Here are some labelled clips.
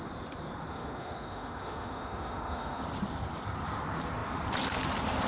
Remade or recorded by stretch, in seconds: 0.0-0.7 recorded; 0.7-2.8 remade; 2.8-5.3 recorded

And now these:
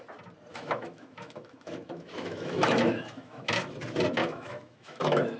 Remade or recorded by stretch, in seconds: 0.0-0.5 recorded; 0.5-3.7 remade; 3.7-4.2 recorded; 4.2-5.4 remade

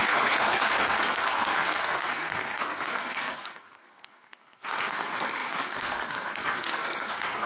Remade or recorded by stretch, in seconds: 0.0-7.5 remade

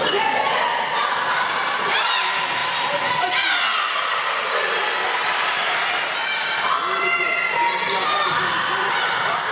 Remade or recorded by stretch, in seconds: 0.0-9.5 recorded